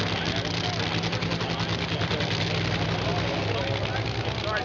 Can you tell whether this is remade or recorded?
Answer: recorded